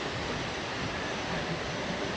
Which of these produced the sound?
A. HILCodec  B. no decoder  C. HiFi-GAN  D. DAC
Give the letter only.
B